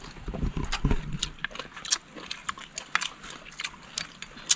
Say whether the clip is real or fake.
real